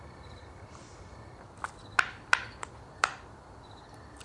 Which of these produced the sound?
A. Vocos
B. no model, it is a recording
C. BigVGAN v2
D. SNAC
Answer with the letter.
B